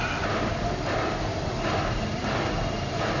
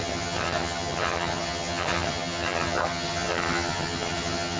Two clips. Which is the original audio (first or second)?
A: first